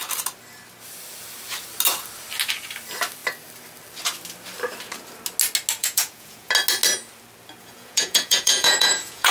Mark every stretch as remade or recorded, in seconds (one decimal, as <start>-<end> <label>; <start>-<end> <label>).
0.0-5.8 recorded; 5.8-6.5 remade; 6.5-7.6 recorded; 7.6-9.3 remade